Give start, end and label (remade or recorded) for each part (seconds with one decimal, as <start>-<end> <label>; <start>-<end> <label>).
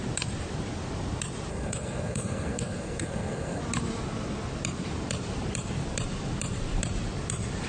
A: 0.0-1.5 recorded; 1.5-3.6 remade; 3.6-7.7 recorded